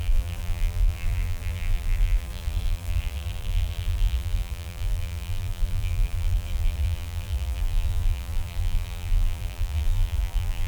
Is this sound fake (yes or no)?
yes